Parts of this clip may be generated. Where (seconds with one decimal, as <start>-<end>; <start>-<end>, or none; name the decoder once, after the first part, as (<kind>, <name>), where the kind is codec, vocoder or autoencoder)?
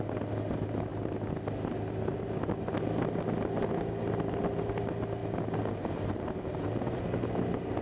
none